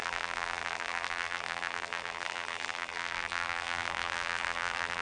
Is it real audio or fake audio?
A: fake